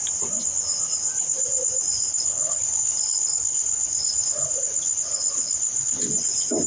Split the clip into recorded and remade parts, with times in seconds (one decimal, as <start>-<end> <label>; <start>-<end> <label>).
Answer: 0.0-2.1 recorded; 2.1-6.1 remade; 6.1-6.7 recorded